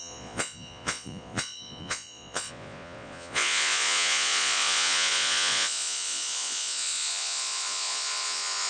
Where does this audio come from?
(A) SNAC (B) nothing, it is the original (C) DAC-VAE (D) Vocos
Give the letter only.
D